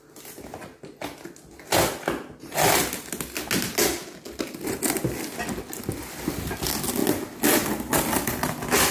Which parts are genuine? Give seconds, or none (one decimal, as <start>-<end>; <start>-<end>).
0.0-8.9